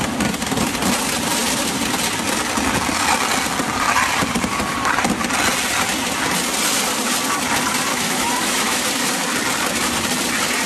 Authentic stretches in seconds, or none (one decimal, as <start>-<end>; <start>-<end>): 0.0-7.9; 8.8-10.7